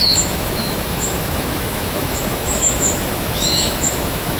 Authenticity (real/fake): fake